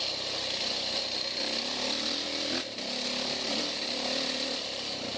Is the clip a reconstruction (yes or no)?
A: no